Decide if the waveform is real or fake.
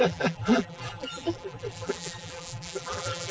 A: fake